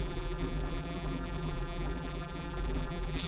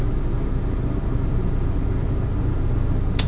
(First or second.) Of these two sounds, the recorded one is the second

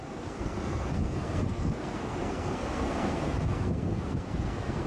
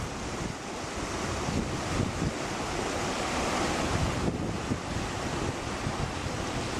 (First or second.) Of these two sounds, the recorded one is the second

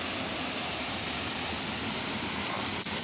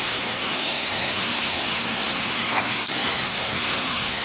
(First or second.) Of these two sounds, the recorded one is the first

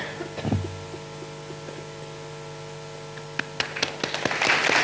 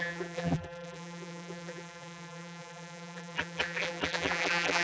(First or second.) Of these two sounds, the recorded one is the first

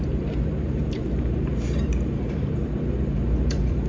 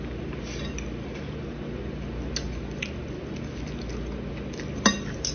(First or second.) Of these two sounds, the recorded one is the second